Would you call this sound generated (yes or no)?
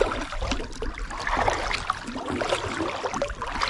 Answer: no